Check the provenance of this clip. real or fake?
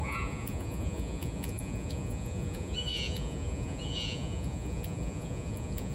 fake